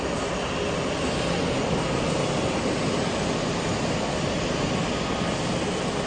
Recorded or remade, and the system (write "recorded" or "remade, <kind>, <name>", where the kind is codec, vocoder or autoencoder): recorded